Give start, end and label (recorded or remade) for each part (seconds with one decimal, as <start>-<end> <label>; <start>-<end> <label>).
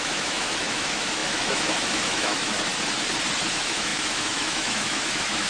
0.0-2.7 remade; 2.7-3.5 recorded; 3.5-5.5 remade